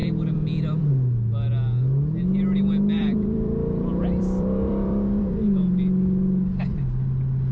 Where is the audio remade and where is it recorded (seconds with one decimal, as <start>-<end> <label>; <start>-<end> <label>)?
0.0-0.9 remade; 0.9-3.0 recorded; 3.0-5.2 remade; 5.2-7.5 recorded